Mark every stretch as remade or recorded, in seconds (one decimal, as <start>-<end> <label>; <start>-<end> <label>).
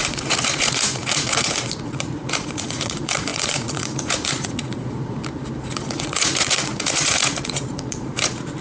0.0-5.2 remade; 5.2-5.7 recorded; 5.7-8.6 remade